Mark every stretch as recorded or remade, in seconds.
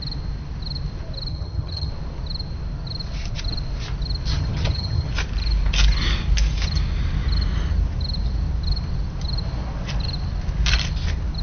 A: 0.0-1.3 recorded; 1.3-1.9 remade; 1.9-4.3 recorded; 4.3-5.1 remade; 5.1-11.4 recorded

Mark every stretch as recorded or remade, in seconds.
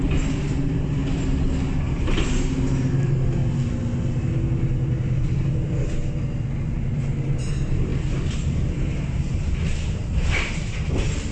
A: 0.0-1.0 remade; 1.0-1.6 recorded; 1.6-3.4 remade; 3.4-6.7 recorded; 6.7-7.9 remade; 7.9-8.6 recorded; 8.6-11.3 remade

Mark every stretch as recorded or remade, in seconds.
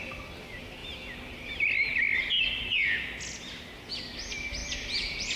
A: 0.0-5.4 recorded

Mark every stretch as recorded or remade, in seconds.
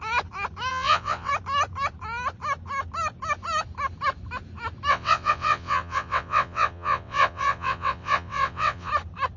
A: 0.0-0.7 recorded; 0.7-1.3 remade; 1.3-4.9 recorded; 4.9-8.9 remade; 8.9-9.4 recorded